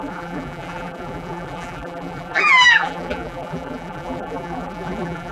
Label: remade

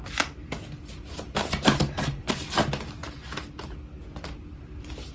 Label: remade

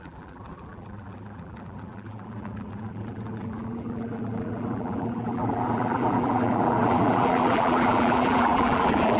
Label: remade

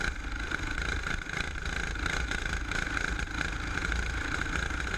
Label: recorded